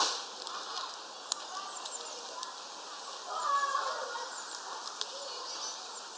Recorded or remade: recorded